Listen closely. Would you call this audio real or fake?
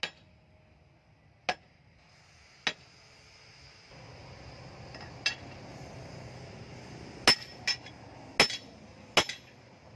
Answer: real